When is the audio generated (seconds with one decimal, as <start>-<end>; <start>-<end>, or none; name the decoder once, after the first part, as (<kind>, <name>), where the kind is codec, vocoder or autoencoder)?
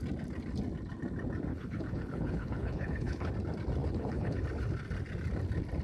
1.5-3.3 (codec, HILCodec); 3.8-4.4